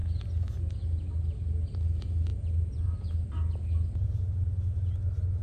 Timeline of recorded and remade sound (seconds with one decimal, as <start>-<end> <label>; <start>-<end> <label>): 0.0-2.3 recorded; 2.3-4.2 remade; 4.2-5.4 recorded